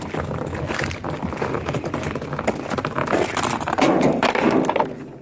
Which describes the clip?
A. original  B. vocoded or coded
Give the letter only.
A